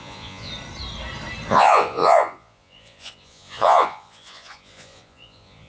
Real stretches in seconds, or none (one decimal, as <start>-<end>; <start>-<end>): 0.5-1.5